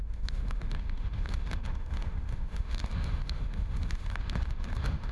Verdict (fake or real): fake